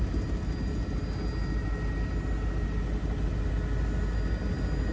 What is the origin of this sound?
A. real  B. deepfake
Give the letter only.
A